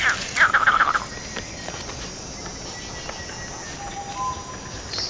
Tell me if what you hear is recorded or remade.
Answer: recorded